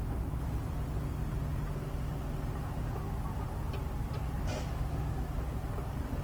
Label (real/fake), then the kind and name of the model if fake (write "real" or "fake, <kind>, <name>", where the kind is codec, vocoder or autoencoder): real